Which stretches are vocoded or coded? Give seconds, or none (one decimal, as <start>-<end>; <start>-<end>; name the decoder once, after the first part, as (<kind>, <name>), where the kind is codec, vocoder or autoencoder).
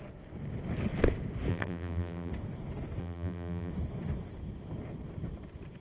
1.5-2.3 (vocoder, BigVGAN v2); 3.0-3.7